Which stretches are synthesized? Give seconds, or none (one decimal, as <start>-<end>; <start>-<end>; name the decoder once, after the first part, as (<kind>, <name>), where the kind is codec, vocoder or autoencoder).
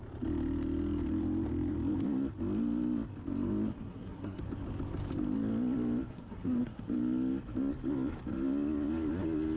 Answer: 3.7-4.4 (codec, SNAC); 6.1-6.8